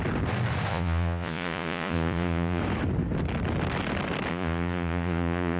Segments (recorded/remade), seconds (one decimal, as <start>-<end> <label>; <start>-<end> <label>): 0.0-0.7 recorded; 0.7-2.6 remade; 2.6-4.3 recorded; 4.3-5.6 remade